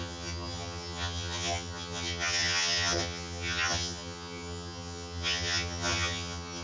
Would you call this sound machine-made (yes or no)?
yes